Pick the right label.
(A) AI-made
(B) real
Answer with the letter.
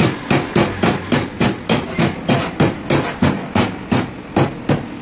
B